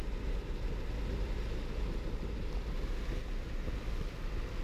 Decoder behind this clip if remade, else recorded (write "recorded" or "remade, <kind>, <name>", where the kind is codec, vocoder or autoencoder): recorded